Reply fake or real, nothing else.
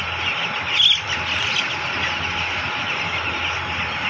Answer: real